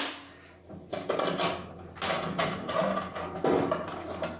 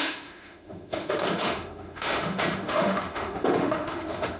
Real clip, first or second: first